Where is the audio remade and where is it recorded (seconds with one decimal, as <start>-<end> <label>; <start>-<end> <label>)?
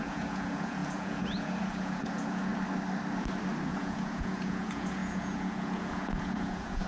0.0-2.5 remade; 2.5-3.7 recorded; 3.7-6.9 remade